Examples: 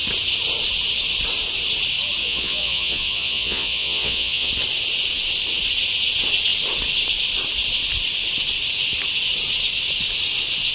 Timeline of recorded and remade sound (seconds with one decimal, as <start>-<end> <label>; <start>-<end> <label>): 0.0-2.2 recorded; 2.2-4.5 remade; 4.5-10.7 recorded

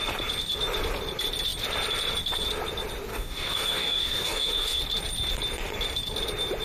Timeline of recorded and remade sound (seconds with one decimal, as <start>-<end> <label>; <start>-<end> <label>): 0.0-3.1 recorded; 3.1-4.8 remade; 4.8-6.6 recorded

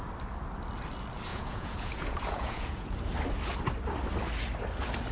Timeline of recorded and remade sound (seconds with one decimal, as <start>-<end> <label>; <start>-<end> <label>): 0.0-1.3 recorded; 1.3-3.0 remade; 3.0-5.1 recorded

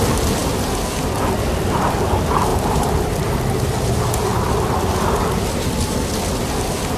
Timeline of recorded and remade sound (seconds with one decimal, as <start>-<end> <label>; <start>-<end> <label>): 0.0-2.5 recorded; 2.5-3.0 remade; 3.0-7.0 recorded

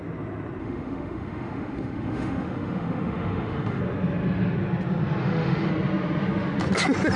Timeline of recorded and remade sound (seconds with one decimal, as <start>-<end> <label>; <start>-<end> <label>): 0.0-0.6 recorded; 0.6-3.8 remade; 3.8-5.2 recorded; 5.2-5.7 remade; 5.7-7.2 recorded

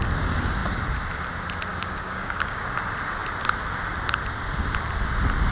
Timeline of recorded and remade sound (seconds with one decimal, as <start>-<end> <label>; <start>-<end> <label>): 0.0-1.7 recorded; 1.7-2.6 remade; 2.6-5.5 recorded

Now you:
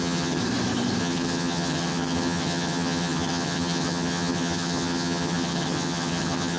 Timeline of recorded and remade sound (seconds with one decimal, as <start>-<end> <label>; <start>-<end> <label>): 0.0-0.4 remade; 0.4-1.0 recorded; 1.0-6.6 remade

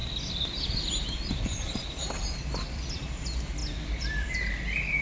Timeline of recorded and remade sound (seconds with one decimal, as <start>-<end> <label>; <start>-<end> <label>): 0.0-0.6 recorded; 0.6-5.0 remade